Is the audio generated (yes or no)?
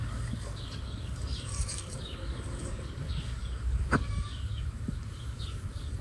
yes